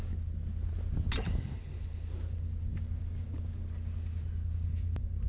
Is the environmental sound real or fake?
real